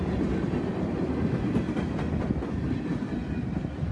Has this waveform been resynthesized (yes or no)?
no